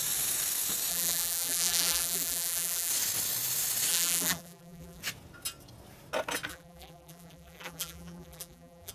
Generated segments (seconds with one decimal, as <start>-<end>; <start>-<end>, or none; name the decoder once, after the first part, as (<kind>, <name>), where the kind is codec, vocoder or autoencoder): 0.9-2.9 (vocoder, BigVGAN v2); 3.9-5.0; 6.5-8.9